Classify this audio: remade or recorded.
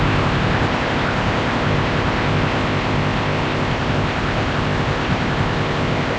remade